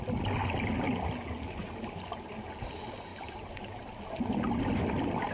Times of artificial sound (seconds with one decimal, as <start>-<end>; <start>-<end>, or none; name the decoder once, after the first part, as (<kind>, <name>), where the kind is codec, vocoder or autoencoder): 1.6-2.3 (vocoder, BigVGAN v2); 3.1-4.0